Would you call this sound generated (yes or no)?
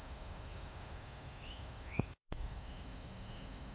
yes